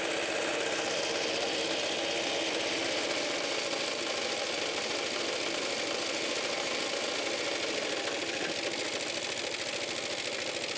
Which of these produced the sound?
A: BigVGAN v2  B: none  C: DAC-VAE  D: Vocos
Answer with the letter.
B